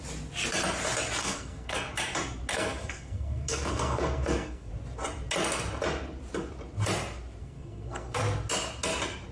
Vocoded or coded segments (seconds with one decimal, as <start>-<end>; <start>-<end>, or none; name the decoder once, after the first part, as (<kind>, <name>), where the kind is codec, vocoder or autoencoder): 1.2-1.9 (codec, SNAC); 2.5-4.7; 7.4-8.2